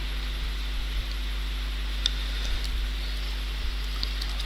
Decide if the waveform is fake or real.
real